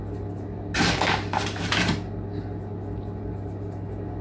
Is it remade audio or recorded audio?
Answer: recorded